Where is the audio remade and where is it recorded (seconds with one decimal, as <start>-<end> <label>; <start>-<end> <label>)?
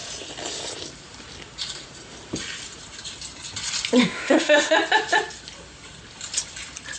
0.0-4.0 recorded; 4.0-4.7 remade; 4.7-7.0 recorded